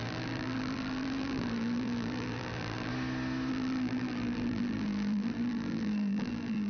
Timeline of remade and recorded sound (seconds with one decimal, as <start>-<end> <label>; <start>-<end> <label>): 0.0-2.9 remade; 2.9-3.5 recorded; 3.5-6.7 remade